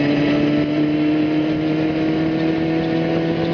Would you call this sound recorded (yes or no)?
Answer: yes